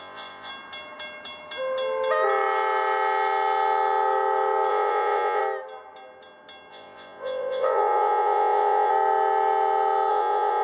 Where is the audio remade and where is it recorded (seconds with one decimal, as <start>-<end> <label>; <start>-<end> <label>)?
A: 0.0-0.5 remade; 0.5-4.7 recorded; 4.7-5.4 remade; 5.4-6.7 recorded; 6.7-8.9 remade; 8.9-10.1 recorded; 10.1-10.6 remade